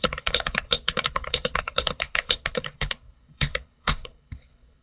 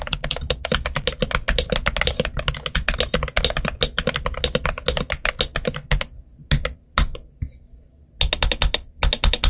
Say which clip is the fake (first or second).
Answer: first